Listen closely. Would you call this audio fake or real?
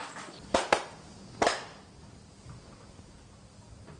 real